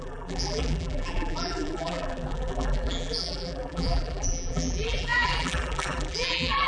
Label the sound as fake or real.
fake